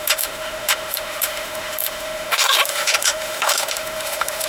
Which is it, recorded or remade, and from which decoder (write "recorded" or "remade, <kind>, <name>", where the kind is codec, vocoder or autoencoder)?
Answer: remade, autoencoder, DAC-VAE